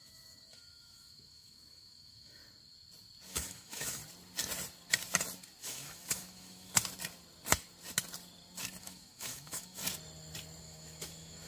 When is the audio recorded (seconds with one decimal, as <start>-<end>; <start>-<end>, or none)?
2.4-3.3; 4.0-5.6; 6.8-8.8; 9.8-10.6